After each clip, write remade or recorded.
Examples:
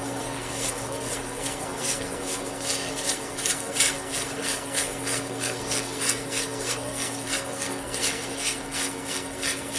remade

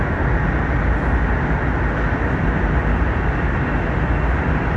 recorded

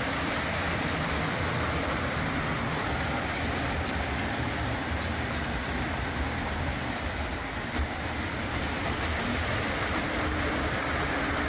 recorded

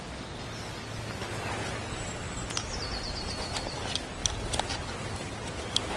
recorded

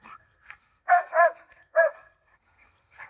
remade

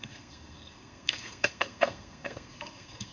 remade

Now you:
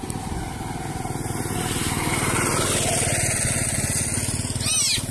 recorded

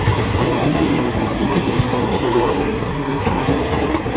remade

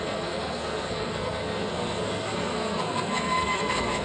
remade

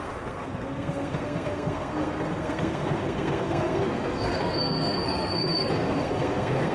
remade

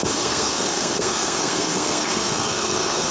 remade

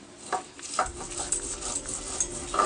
recorded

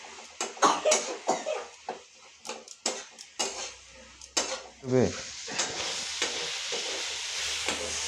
recorded